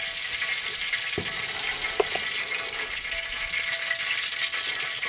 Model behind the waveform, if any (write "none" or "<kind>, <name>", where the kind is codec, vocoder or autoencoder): none